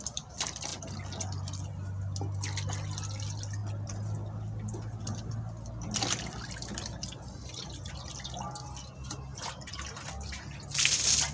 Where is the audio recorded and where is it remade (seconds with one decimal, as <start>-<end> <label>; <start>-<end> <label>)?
0.0-11.3 recorded